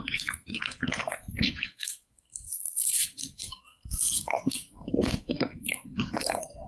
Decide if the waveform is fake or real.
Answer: fake